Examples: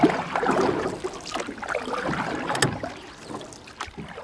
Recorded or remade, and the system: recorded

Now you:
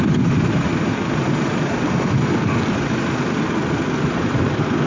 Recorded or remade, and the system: recorded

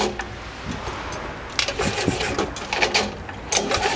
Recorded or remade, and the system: recorded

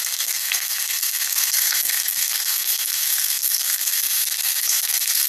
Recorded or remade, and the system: remade, codec, SNAC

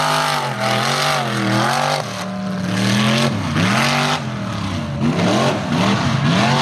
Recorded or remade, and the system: recorded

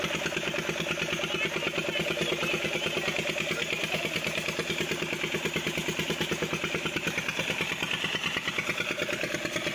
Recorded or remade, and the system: recorded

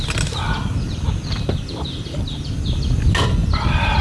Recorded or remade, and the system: recorded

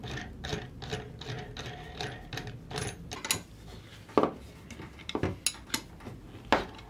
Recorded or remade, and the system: recorded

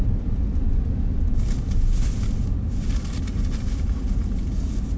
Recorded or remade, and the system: recorded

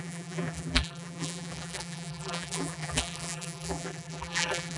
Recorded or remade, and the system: remade, vocoder, BigVGAN v2